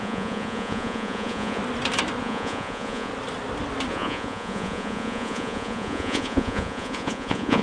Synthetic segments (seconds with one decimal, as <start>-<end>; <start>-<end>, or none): 0.0-1.6; 2.2-3.1; 3.9-7.6